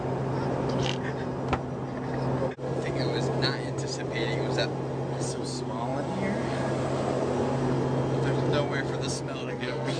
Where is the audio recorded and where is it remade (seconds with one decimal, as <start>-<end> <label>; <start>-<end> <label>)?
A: 0.0-9.4 recorded; 9.4-10.0 remade